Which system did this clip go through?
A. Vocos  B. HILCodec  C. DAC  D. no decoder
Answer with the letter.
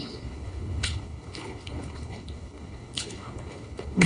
B